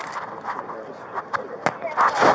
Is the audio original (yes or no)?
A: yes